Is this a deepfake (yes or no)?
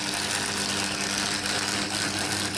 no